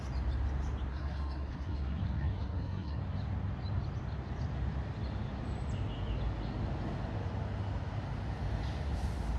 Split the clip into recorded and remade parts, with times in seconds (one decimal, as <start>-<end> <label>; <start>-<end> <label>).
0.0-0.9 recorded; 0.9-3.0 remade; 3.0-9.4 recorded